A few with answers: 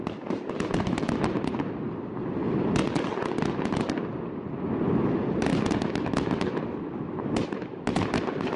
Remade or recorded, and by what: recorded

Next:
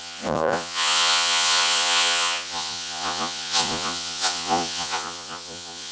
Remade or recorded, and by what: remade, vocoder, Vocos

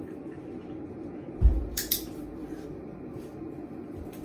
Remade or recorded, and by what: remade, vocoder, BigVGAN v2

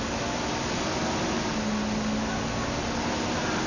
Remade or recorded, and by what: recorded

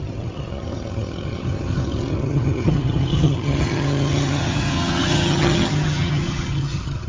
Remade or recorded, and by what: remade, vocoder, HiFi-GAN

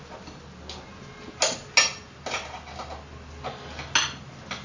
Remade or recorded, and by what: recorded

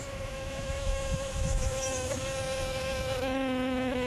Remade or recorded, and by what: remade, autoencoder, DAC-VAE